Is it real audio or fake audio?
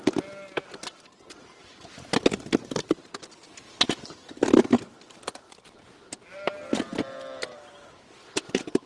real